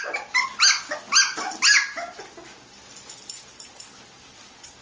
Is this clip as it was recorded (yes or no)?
yes